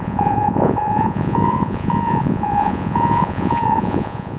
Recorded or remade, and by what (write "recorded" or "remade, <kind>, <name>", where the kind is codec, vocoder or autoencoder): remade, vocoder, Vocos